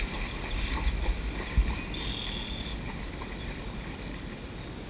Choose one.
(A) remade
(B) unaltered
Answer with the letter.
B